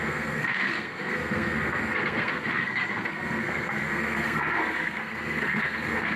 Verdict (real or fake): fake